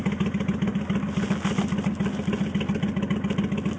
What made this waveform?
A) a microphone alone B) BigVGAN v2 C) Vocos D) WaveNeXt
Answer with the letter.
A